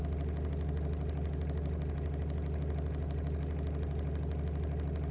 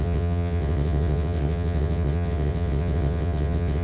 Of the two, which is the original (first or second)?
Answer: first